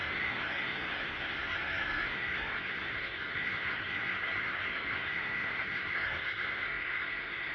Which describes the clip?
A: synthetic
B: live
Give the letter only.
A